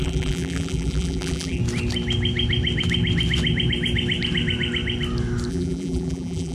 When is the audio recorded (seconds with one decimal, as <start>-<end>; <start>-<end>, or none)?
1.6-5.5